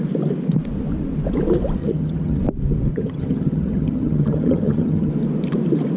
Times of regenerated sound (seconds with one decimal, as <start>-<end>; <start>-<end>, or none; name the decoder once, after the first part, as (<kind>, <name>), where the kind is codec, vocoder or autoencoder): 1.8-2.4 (vocoder, HiFi-GAN); 2.9-5.1

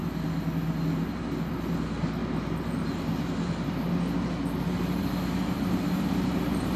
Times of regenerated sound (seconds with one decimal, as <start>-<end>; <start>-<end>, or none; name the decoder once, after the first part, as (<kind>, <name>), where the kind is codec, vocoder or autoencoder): 1.5-2.2 (vocoder, BigVGAN v2); 5.5-6.8

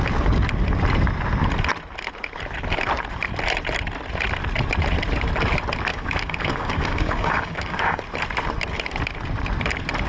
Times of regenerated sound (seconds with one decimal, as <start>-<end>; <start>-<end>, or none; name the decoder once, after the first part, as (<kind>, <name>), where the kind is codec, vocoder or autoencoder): 5.9-8.0 (codec, DAC)

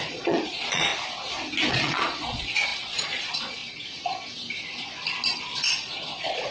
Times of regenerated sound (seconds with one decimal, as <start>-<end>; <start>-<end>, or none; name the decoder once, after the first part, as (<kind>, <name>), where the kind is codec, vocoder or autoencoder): 0.0-0.9 (vocoder, Vocos); 1.7-3.6; 5.4-6.5

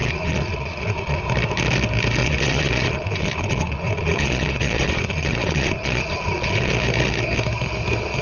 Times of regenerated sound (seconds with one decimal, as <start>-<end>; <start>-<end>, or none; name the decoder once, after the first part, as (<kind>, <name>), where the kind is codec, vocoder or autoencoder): 0.0-1.2 (vocoder, Vocos); 2.2-6.7

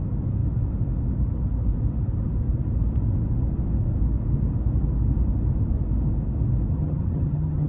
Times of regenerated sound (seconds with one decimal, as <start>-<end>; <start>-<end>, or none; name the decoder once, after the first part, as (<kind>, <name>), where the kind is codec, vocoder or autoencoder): 6.7-7.7 (vocoder, HiFi-GAN)

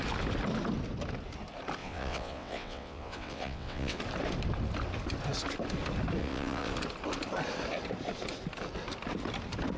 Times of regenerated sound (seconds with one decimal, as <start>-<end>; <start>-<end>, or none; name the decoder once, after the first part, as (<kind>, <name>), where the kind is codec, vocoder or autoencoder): 1.8-4.0 (vocoder, WaveNeXt); 6.2-6.7

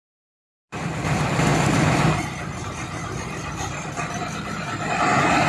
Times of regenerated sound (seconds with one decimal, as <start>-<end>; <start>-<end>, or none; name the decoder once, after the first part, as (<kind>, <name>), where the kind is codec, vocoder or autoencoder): 0.0-5.5 (vocoder, BigVGAN v2)